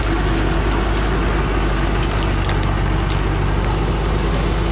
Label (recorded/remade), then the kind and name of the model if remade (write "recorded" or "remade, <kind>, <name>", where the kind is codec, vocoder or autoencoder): recorded